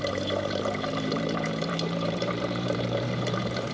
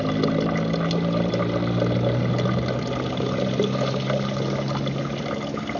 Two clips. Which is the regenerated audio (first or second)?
first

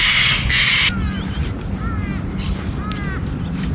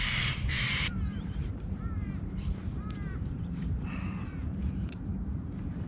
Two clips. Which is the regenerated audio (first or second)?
second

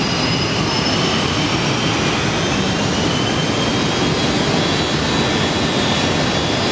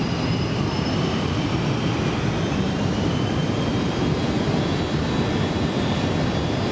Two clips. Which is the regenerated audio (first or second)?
second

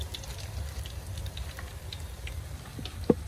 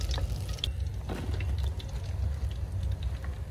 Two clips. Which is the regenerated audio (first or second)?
first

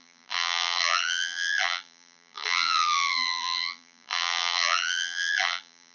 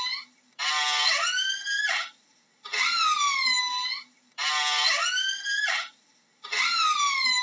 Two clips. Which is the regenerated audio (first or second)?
first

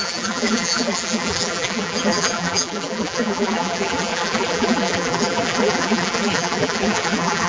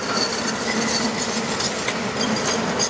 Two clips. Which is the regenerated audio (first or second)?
first